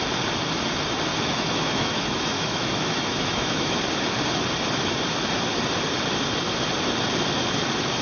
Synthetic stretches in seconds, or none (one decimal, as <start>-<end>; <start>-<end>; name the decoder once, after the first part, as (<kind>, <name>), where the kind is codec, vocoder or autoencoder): 1.1-3.8 (autoencoder, DAC-VAE)